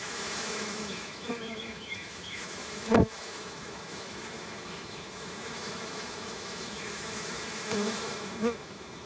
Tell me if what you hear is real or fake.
fake